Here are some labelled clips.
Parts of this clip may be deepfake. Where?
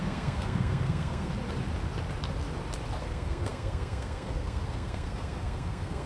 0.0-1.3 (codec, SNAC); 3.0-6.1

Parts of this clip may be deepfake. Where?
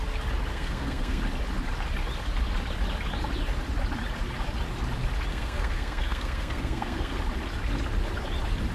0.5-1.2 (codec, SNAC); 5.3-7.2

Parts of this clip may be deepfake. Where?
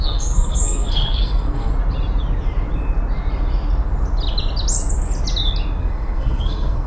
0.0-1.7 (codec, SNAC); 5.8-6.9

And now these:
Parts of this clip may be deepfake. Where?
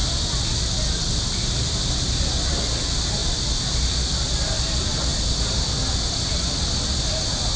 none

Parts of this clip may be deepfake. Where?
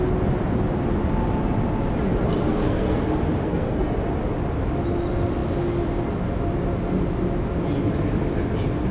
2.5-3.0 (codec, SNAC); 3.4-3.9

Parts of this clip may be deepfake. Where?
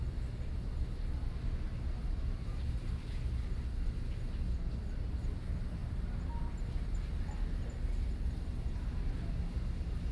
none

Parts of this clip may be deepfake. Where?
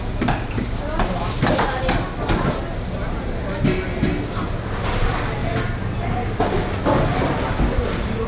none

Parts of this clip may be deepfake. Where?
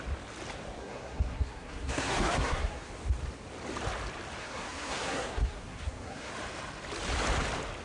0.8-2.9 (codec, SNAC); 4.4-6.3